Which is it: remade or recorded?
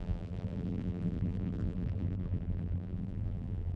remade